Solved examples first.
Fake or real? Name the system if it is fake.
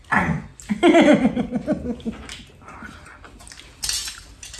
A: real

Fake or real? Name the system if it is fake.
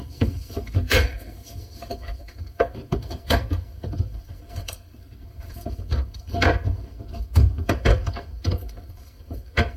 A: fake, codec, SNAC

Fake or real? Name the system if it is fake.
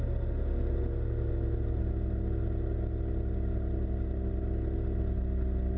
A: real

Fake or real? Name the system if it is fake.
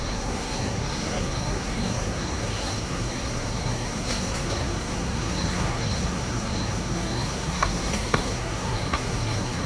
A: fake, codec, SNAC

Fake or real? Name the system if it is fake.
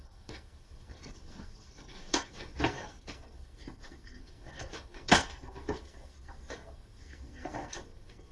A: fake, codec, SNAC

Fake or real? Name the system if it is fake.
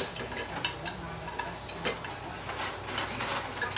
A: real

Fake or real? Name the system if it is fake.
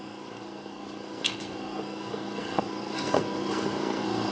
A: fake, codec, SNAC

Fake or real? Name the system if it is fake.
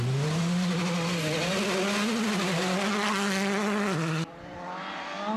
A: real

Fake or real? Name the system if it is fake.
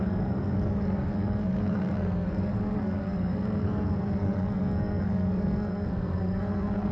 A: fake, codec, SNAC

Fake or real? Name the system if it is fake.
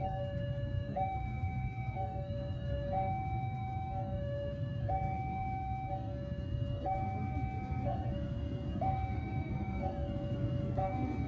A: fake, codec, SNAC